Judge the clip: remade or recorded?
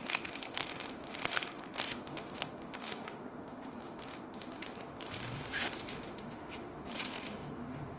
remade